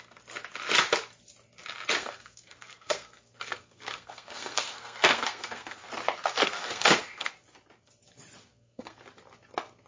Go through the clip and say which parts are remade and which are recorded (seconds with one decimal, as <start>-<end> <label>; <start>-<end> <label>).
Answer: 0.0-2.0 recorded; 2.0-5.9 remade; 5.9-6.4 recorded; 6.4-7.3 remade; 7.3-8.4 recorded; 8.4-9.0 remade; 9.0-9.9 recorded